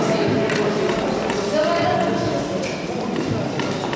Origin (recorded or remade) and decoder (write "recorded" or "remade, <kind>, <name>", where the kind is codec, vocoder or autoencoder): recorded